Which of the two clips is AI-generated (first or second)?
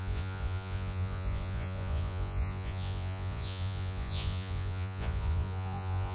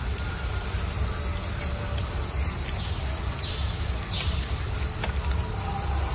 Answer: first